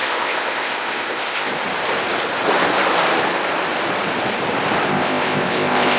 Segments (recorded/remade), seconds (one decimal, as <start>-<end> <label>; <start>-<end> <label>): 0.0-1.5 remade; 1.5-4.9 recorded; 4.9-6.0 remade